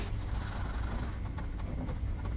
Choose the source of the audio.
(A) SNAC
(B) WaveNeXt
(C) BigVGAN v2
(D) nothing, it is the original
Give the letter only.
D